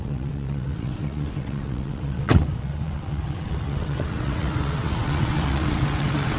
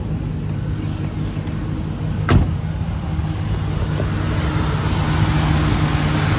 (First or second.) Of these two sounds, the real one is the second